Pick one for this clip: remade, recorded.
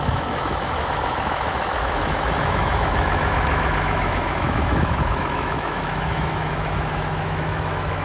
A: remade